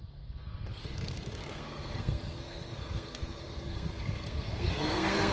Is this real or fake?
fake